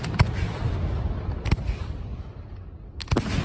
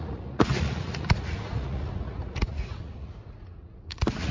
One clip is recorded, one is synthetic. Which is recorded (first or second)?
first